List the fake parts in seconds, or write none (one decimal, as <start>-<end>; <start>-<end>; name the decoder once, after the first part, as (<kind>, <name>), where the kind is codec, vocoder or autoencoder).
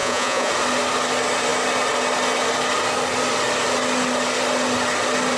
0.0-0.5 (vocoder, Vocos)